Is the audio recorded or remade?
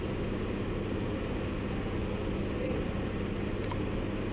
recorded